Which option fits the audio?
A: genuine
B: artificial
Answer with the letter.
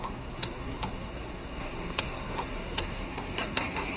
B